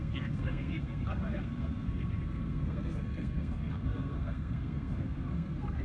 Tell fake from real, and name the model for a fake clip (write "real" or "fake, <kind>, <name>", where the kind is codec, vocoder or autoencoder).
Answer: fake, codec, SNAC